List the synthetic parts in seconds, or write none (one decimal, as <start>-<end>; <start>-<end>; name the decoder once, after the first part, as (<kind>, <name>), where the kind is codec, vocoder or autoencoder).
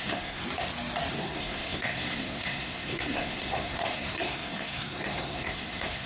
0.0-0.4 (codec, SNAC); 1.1-6.1